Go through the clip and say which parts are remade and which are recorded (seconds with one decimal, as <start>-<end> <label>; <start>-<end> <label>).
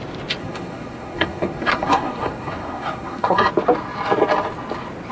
0.0-0.4 recorded; 0.4-3.5 remade; 3.5-5.1 recorded